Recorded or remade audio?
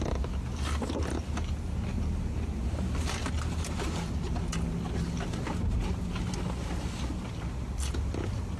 recorded